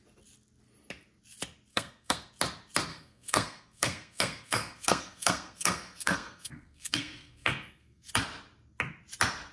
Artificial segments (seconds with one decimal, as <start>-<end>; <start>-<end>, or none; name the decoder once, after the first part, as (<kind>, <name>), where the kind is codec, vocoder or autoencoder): 1.7-2.3 (codec, SNAC); 2.9-8.1